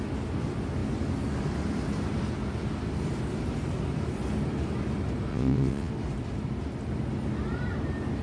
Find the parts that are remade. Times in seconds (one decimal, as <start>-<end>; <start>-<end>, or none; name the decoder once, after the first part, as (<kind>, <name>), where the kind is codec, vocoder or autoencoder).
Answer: 5.3-5.9 (vocoder, WaveNeXt)